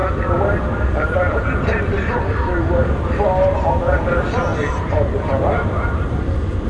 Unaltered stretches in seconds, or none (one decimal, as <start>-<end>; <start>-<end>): 0.0-6.7